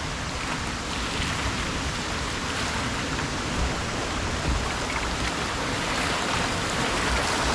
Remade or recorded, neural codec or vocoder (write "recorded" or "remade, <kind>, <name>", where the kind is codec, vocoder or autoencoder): recorded